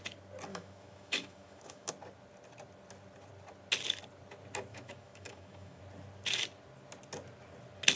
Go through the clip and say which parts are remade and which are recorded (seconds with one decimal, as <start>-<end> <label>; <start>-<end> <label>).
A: 0.0-0.5 recorded; 0.5-1.9 remade; 1.9-4.7 recorded; 4.7-5.8 remade; 5.8-8.0 recorded